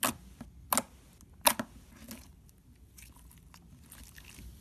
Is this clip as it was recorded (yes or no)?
yes